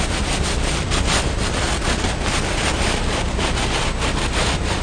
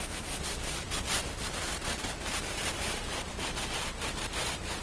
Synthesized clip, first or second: second